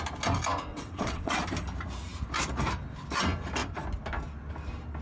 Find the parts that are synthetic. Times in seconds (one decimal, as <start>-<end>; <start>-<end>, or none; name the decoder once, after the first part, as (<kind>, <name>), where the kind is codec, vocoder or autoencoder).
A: 0.7-1.4 (vocoder, WaveNeXt)